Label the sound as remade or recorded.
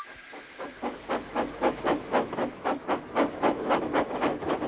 remade